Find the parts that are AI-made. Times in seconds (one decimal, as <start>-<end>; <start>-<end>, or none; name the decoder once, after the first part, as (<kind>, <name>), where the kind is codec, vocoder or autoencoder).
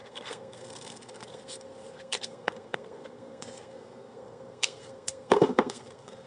0.0-6.3 (codec, SNAC)